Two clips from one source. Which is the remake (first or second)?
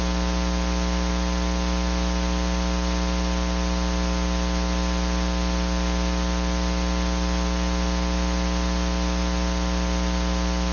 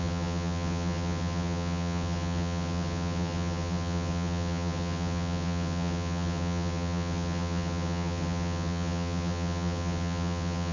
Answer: second